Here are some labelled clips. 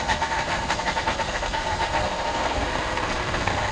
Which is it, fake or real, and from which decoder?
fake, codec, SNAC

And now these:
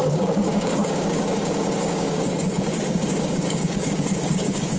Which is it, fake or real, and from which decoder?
fake, codec, DAC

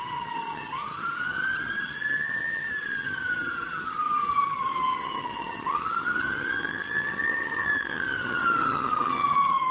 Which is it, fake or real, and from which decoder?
fake, vocoder, HiFi-GAN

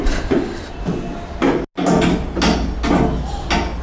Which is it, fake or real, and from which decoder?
real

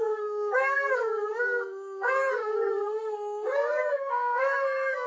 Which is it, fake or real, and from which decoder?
fake, codec, SNAC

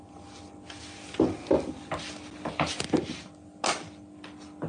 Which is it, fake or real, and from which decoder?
real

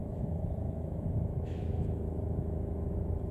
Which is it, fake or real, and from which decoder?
fake, autoencoder, DAC-VAE